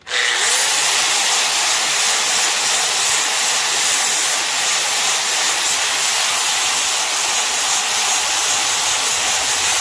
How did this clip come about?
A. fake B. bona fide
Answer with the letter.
B